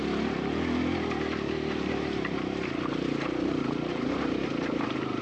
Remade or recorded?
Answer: recorded